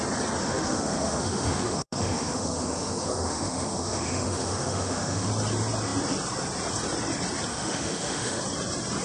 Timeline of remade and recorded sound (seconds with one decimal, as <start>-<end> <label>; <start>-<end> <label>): 0.0-0.4 recorded; 0.4-5.3 remade; 5.3-7.5 recorded; 7.5-8.4 remade; 8.4-9.0 recorded